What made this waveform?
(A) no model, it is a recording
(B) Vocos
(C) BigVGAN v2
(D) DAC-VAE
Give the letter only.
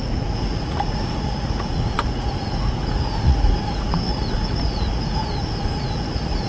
B